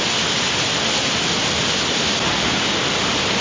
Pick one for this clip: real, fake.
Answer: real